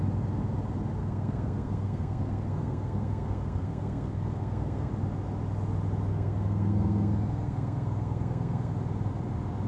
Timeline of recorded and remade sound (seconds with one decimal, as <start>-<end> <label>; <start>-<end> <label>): 0.0-1.0 recorded; 1.0-4.9 remade; 4.9-6.1 recorded; 6.1-8.7 remade; 8.7-9.7 recorded